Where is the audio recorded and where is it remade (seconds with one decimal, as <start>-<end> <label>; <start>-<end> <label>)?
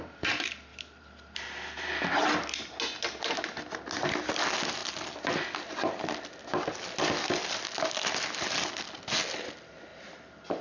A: 0.0-0.7 recorded; 0.7-1.9 remade; 1.9-10.6 recorded